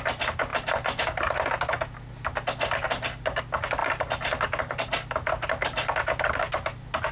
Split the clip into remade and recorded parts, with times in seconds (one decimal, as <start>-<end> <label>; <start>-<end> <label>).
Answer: 0.0-7.1 recorded

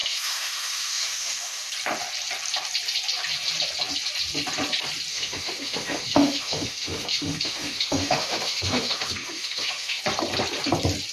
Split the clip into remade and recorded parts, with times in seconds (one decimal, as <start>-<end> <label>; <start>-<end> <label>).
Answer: 0.0-1.7 remade; 1.7-5.1 recorded; 5.1-10.0 remade; 10.0-11.1 recorded